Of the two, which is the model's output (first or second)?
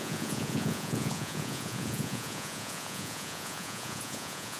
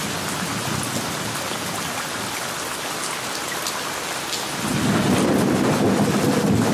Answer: first